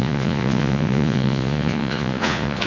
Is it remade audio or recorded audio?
remade